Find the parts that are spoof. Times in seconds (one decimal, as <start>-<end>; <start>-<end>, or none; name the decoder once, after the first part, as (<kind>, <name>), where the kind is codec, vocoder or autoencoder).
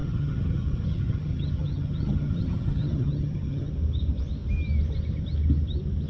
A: 0.0-3.7 (vocoder, HiFi-GAN)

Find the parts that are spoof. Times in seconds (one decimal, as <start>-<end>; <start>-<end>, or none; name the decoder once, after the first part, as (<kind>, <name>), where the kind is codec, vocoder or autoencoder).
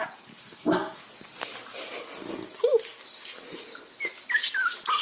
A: 0.4-1.0 (codec, SNAC)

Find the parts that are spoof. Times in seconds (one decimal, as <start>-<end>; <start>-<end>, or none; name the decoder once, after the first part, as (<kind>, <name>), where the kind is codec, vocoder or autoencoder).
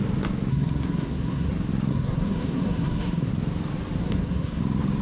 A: 0.5-1.5 (codec, SNAC); 1.9-3.3; 4.0-4.6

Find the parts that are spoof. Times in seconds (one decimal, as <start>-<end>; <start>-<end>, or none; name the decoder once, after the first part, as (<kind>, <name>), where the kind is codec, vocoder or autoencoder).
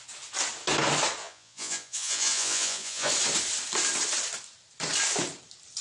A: 1.2-3.1 (vocoder, Vocos)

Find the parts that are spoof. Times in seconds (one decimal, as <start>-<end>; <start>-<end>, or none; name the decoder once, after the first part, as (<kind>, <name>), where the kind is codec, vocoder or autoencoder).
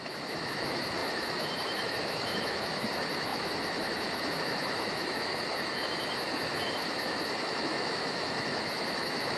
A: 0.0-9.4 (autoencoder, DAC-VAE)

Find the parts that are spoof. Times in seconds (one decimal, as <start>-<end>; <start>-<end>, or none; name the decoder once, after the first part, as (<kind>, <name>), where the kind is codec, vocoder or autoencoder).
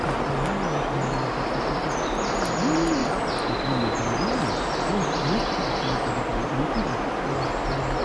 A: 3.0-4.9 (vocoder, BigVGAN v2); 6.3-6.8